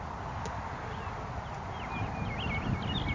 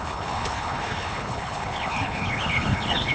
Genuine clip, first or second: first